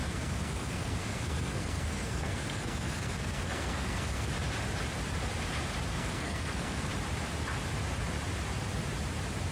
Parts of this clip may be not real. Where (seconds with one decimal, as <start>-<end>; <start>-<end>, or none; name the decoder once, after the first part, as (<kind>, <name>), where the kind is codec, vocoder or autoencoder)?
0.0-4.3 (codec, SNAC); 5.9-6.9